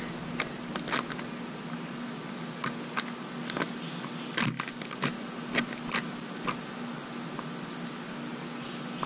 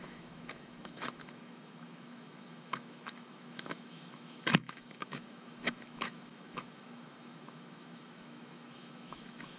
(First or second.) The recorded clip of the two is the first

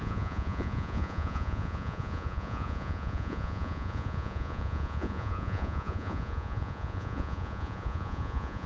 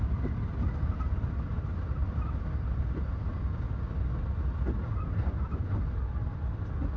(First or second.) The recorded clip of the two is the second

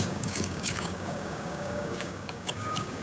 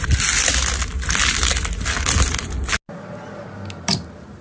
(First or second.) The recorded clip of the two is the second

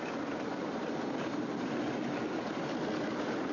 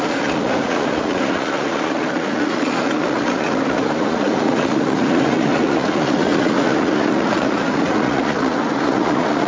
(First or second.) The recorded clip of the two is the first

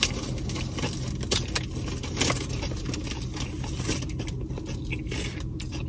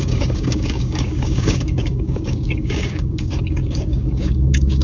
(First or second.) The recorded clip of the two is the first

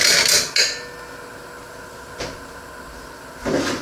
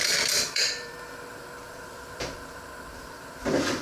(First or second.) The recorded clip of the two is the first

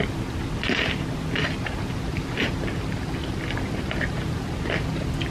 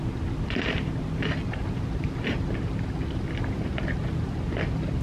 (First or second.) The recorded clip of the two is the first